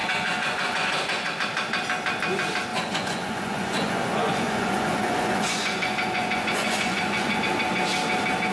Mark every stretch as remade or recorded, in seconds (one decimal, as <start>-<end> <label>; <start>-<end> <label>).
0.0-1.3 remade; 1.3-2.7 recorded; 2.7-7.4 remade; 7.4-8.5 recorded